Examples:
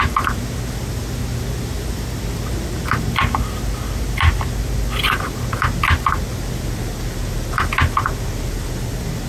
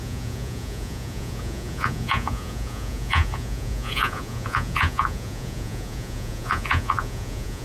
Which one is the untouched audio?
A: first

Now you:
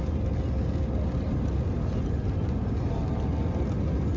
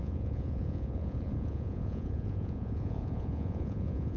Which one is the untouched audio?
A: first